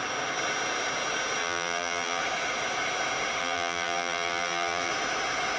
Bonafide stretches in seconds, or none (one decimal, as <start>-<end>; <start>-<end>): 0.0-1.4; 2.2-3.4; 4.9-5.6